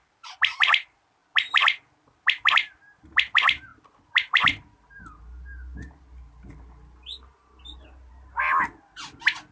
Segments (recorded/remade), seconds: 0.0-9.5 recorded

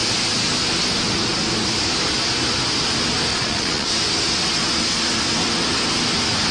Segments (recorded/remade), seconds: 0.0-3.3 recorded; 3.3-3.9 remade; 3.9-6.5 recorded

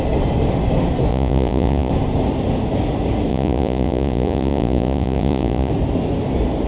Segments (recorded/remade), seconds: 0.0-1.1 recorded; 1.1-1.9 remade; 1.9-3.3 recorded; 3.3-5.7 remade; 5.7-6.7 recorded

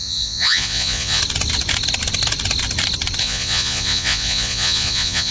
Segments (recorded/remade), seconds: 0.0-1.2 remade; 1.2-3.2 recorded; 3.2-5.3 remade

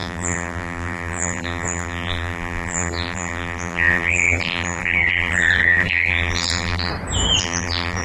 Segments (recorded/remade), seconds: 0.0-6.9 remade; 6.9-7.4 recorded; 7.4-8.0 remade